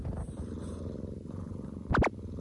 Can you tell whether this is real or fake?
real